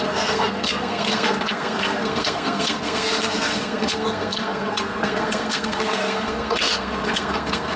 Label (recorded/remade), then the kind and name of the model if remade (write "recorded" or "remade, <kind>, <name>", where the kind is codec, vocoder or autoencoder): remade, codec, SNAC